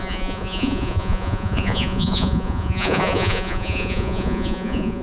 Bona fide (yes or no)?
no